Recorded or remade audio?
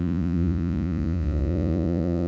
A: remade